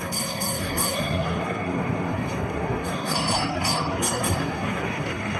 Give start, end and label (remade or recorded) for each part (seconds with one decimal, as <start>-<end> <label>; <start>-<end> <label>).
0.0-5.4 remade